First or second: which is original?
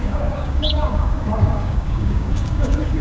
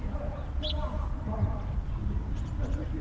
second